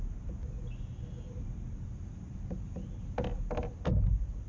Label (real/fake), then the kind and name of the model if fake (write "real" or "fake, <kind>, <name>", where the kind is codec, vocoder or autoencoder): real